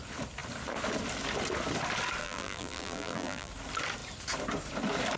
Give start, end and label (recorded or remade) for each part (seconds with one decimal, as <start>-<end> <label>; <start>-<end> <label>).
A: 0.0-2.2 recorded; 2.2-3.5 remade; 3.5-5.2 recorded